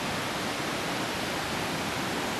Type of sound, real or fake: real